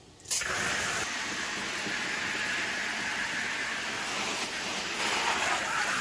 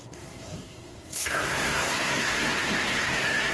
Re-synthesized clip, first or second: second